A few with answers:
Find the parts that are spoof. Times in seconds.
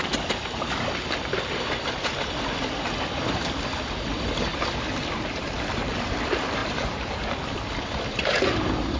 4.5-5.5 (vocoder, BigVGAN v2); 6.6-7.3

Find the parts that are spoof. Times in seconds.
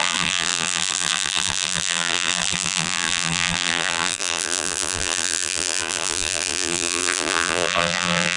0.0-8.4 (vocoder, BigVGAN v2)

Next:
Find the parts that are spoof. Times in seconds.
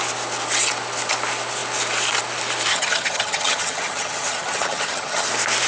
2.7-5.3 (vocoder, HiFi-GAN)